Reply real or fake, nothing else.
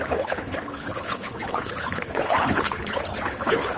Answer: fake